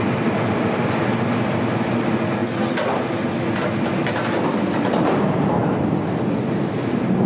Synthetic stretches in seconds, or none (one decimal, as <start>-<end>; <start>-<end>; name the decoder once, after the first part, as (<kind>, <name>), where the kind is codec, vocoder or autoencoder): none